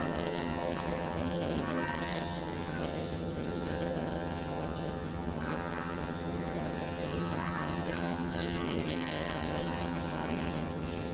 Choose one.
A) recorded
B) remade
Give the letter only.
B